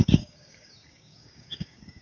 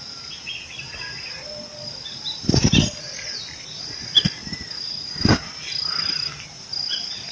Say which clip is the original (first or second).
second